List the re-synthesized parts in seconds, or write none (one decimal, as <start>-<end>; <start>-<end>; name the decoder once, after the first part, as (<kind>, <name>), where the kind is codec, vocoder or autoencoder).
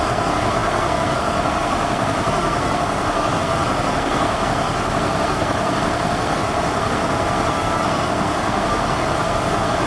0.0-9.9 (codec, SNAC)